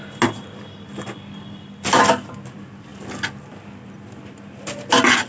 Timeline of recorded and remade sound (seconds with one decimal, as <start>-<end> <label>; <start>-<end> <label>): 0.0-5.3 recorded